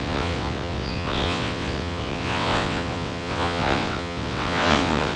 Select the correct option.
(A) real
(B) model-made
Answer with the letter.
B